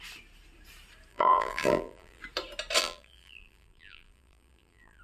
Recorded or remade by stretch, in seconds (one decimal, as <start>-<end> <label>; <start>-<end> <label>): 0.0-1.1 recorded; 1.1-2.2 remade; 2.2-2.8 recorded; 2.8-5.0 remade